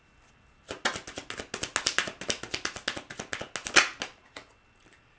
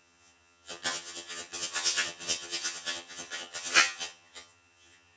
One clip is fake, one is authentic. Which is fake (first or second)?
second